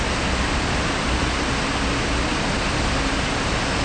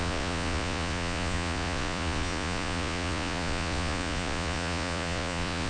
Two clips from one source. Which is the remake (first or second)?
second